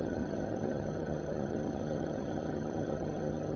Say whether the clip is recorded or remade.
remade